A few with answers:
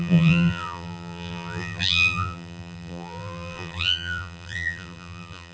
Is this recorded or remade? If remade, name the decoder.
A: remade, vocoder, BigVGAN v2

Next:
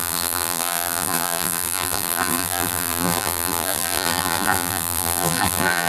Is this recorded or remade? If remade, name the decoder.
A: remade, vocoder, BigVGAN v2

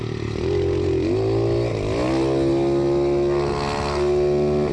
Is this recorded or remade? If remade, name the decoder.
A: recorded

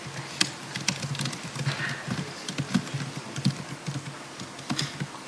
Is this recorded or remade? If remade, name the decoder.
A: recorded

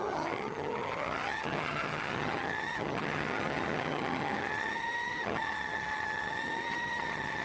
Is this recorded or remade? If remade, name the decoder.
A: remade, vocoder, HiFi-GAN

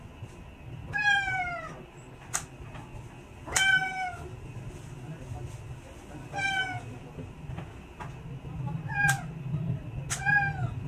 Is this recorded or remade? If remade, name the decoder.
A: recorded